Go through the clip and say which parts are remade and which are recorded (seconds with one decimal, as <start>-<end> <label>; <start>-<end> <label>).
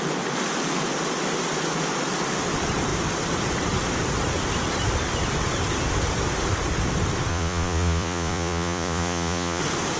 0.0-7.3 recorded; 7.3-9.6 remade; 9.6-10.0 recorded